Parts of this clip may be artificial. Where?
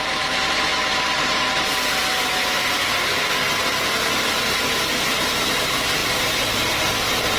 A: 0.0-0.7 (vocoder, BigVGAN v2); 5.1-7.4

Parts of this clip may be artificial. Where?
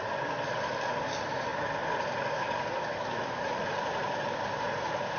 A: none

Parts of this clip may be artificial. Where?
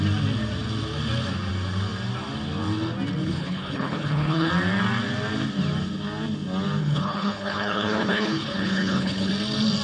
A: 3.2-4.5 (codec, HILCodec); 6.8-9.3